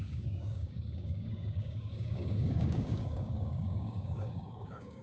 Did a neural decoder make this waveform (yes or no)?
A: yes